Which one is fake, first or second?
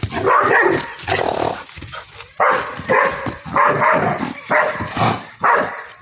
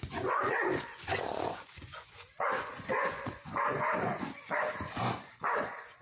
second